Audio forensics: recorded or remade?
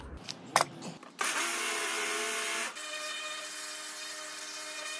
recorded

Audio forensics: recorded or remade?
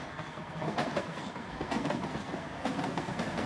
remade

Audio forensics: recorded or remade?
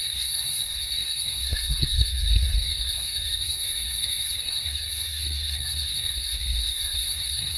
remade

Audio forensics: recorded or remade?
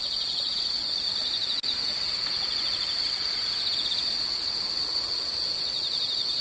recorded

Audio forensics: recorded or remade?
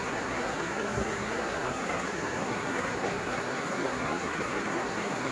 remade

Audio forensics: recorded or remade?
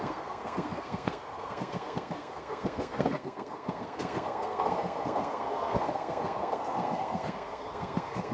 remade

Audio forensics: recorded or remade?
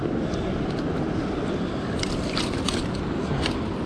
recorded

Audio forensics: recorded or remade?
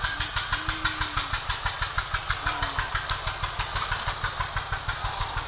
recorded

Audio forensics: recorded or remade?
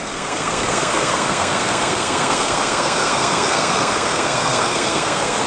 remade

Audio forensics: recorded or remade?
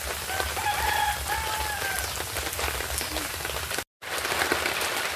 recorded